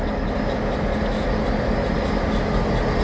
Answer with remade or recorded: recorded